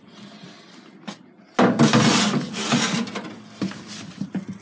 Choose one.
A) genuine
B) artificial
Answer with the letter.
A